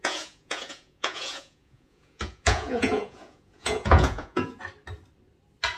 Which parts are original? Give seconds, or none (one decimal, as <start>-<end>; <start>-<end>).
4.6-5.8